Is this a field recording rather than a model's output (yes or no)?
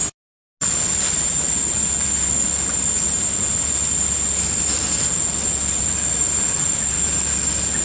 yes